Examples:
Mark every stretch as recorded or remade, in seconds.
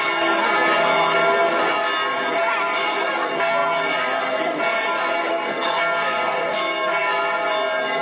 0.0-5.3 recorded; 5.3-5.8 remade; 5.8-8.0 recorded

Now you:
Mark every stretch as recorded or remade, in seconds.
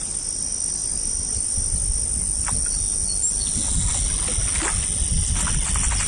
0.0-6.1 recorded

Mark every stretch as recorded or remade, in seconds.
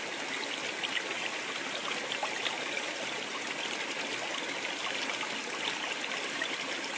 0.0-7.0 recorded